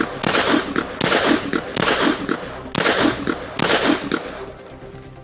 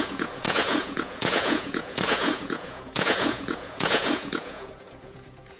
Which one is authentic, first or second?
first